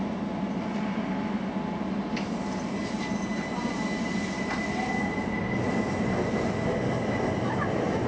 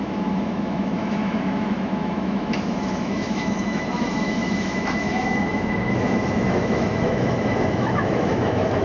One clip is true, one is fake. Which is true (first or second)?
first